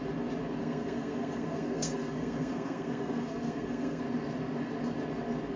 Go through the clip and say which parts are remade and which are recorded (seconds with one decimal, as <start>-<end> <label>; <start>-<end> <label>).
0.0-0.6 recorded; 0.6-4.0 remade; 4.0-5.6 recorded